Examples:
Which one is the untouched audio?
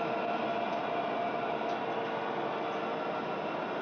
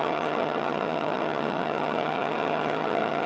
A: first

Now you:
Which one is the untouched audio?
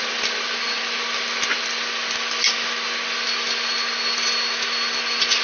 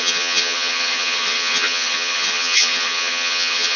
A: first